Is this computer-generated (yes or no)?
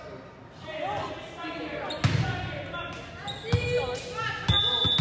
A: no